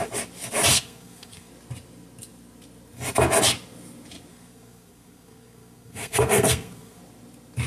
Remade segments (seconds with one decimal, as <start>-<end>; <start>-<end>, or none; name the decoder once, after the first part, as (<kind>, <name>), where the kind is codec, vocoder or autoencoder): 0.7-1.5 (codec, SNAC); 4.3-7.0